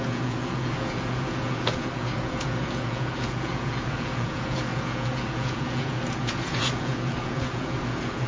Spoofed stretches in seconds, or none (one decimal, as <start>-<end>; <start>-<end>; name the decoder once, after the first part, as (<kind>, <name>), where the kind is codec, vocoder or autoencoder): 0.0-8.3 (vocoder, Vocos)